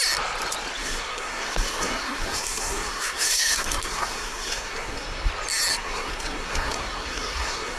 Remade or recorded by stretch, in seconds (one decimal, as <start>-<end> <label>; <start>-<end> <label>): 0.0-0.8 recorded; 0.8-5.3 remade; 5.3-5.7 recorded; 5.7-7.8 remade

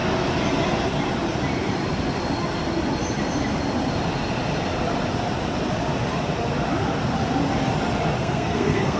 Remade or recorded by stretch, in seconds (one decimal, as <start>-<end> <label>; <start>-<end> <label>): 0.0-8.2 recorded; 8.2-9.0 remade